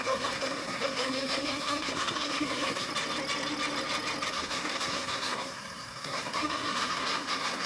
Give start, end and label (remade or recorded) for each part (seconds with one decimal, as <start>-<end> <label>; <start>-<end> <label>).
0.0-2.9 remade; 2.9-4.3 recorded; 4.3-7.7 remade